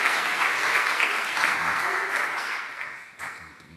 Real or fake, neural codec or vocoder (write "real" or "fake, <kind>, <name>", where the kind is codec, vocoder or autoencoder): fake, codec, SNAC